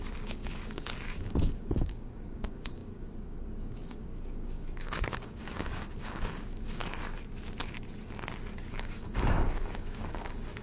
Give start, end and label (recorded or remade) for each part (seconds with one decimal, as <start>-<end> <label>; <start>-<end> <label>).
0.0-6.8 remade; 6.8-8.5 recorded; 8.5-10.6 remade